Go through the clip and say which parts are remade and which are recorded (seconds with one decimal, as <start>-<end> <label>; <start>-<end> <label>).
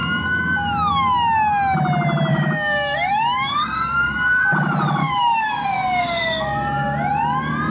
0.0-2.3 recorded; 2.3-4.4 remade; 4.4-5.0 recorded; 5.0-6.0 remade; 6.0-7.7 recorded